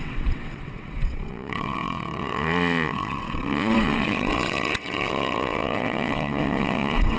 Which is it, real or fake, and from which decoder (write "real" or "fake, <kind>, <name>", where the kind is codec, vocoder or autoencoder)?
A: fake, vocoder, WaveNeXt